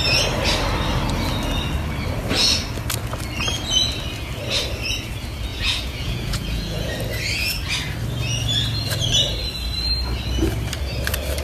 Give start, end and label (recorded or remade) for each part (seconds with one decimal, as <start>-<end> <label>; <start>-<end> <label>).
0.0-5.5 recorded; 5.5-6.9 remade; 6.9-11.4 recorded